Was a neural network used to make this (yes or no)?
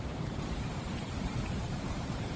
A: yes